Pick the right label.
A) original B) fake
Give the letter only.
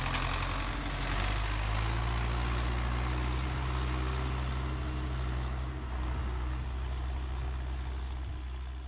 A